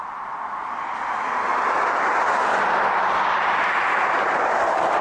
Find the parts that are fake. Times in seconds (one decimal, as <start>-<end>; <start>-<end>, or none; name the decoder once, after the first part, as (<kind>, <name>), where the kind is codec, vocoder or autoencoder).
1.5-4.5 (vocoder, BigVGAN v2)